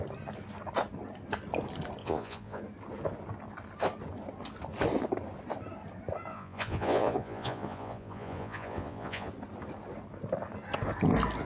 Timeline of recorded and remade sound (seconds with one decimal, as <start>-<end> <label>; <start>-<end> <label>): 0.0-2.0 recorded; 2.0-2.6 remade; 2.6-6.3 recorded; 6.3-9.3 remade; 9.3-11.4 recorded